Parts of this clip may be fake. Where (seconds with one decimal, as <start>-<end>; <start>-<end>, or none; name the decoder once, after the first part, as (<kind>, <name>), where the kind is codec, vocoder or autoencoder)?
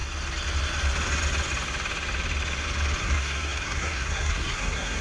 3.0-5.0 (codec, SNAC)